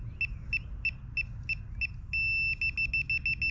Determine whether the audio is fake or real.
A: real